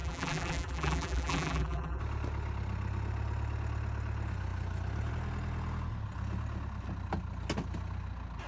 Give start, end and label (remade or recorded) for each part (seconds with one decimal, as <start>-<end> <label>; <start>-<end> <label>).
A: 0.0-2.0 remade; 2.0-8.5 recorded